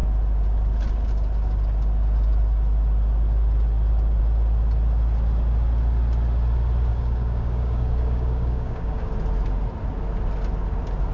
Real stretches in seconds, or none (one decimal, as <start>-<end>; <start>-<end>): 0.0-6.9; 9.1-11.1